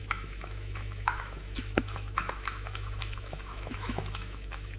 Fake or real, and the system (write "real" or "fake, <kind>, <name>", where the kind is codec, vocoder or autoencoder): fake, autoencoder, DAC-VAE